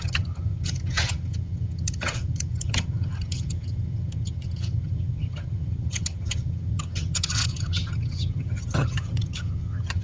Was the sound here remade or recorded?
remade